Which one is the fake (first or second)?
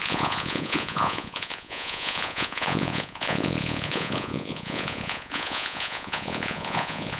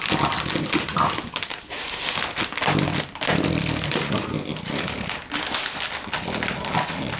first